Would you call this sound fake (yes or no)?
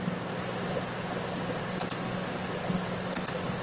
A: no